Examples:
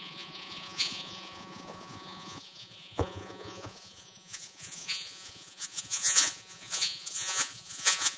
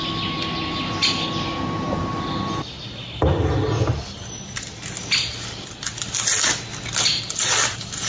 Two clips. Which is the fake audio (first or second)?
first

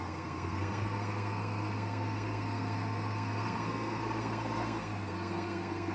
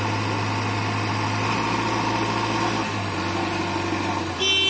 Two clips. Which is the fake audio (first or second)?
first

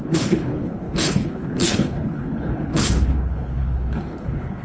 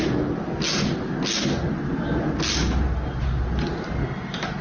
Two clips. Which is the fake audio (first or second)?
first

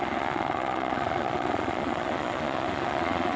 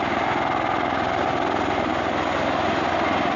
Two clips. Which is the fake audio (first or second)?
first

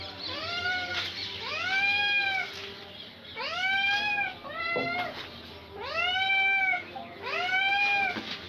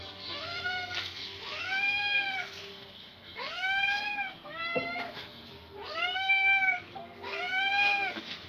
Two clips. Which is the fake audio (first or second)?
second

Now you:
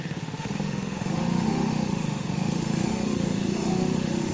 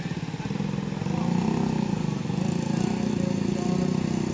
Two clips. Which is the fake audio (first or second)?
first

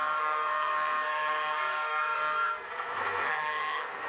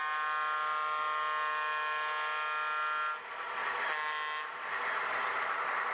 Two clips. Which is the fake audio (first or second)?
first